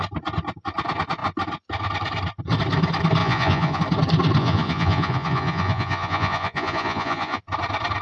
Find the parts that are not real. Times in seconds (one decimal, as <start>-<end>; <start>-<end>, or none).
3.2-3.8; 4.4-7.4